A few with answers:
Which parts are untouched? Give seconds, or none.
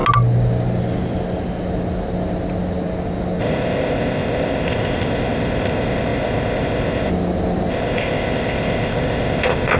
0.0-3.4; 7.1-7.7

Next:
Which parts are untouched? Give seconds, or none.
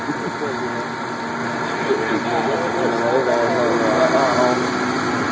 0.0-5.3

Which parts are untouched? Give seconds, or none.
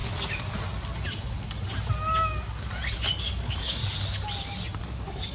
0.0-3.2; 3.8-4.8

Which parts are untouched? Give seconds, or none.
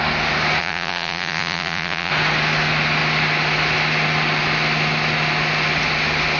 0.0-0.6; 2.1-6.4